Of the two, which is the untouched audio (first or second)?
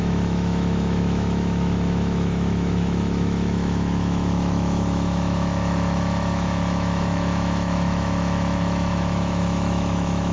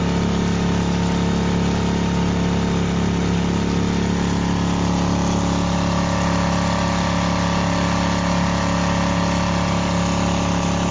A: second